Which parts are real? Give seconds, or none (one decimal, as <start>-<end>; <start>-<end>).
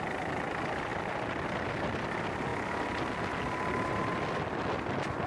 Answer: 0.0-5.3